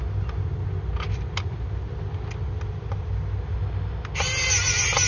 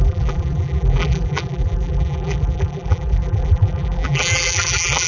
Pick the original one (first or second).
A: first